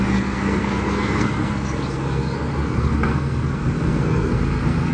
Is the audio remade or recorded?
remade